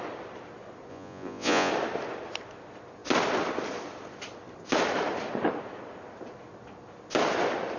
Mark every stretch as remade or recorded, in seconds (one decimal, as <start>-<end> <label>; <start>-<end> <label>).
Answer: 0.0-0.9 recorded; 0.9-1.7 remade; 1.7-7.8 recorded